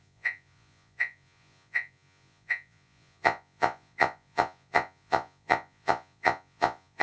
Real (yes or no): no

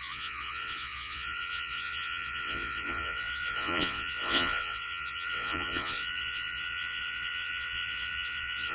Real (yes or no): no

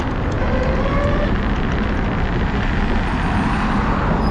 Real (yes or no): yes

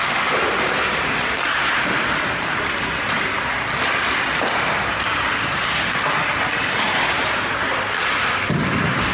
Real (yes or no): yes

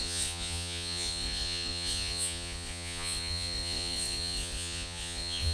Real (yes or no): no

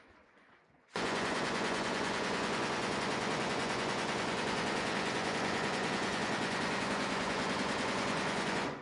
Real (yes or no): no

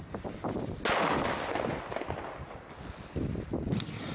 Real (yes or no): yes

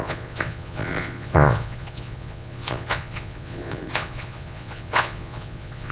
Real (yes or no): no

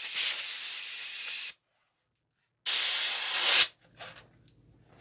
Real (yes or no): yes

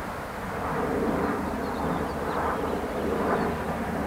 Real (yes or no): yes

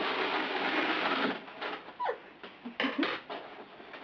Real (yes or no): yes